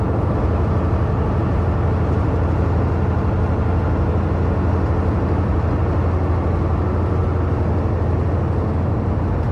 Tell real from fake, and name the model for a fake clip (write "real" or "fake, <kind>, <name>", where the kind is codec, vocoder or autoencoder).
real